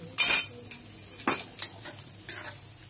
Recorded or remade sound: recorded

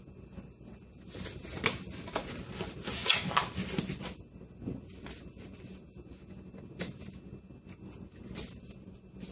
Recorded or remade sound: recorded